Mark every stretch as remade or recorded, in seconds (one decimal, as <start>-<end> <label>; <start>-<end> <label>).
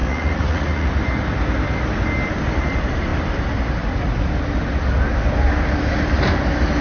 0.0-0.9 remade; 0.9-6.8 recorded